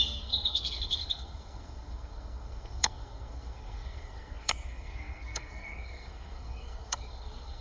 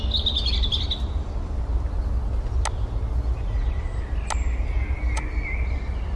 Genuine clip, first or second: second